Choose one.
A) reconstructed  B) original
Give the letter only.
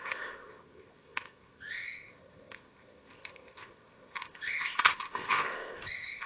A